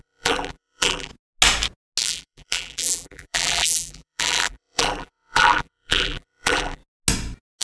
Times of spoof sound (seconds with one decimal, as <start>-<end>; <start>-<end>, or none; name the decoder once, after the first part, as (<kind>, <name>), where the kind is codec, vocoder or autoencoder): 0.0-1.1 (vocoder, BigVGAN v2); 2.0-6.8